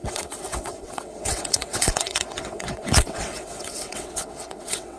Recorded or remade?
remade